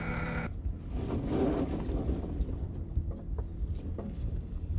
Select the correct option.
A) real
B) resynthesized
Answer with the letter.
A